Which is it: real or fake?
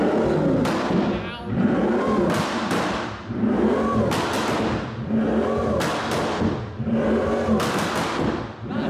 real